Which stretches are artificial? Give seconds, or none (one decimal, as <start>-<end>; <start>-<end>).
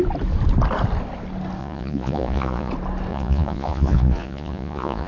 1.6-2.7; 3.1-5.1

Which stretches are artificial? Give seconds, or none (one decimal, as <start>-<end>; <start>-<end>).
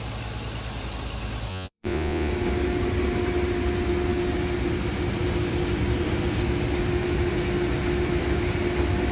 1.5-2.3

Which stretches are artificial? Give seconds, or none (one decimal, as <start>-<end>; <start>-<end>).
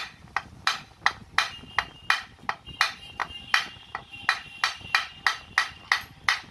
none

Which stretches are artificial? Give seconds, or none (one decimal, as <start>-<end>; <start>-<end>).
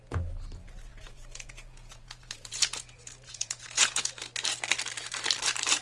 0.9-4.1